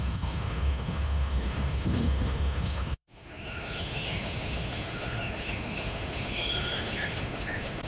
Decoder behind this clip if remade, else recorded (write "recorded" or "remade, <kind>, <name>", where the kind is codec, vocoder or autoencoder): remade, autoencoder, DAC-VAE